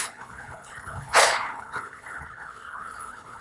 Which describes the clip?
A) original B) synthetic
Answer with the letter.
B